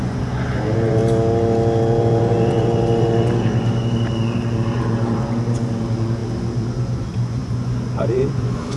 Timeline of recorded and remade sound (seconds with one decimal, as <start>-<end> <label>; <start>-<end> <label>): 0.0-1.0 remade; 1.0-2.0 recorded; 2.0-8.8 remade